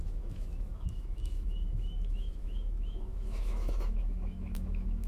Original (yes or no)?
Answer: no